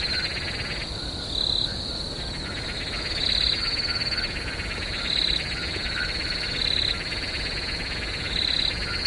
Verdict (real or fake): real